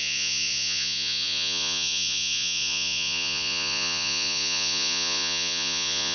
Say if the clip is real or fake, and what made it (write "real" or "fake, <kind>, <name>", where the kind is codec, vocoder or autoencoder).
fake, vocoder, Vocos